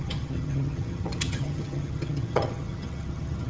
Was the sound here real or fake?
fake